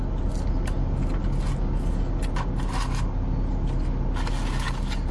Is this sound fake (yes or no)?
no